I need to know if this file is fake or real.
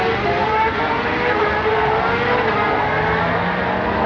real